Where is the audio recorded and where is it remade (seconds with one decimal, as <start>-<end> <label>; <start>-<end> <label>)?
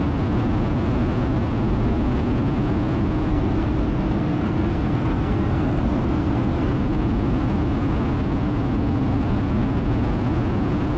0.0-3.3 recorded; 3.3-6.7 remade; 6.7-11.0 recorded